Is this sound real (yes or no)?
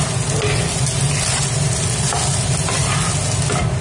yes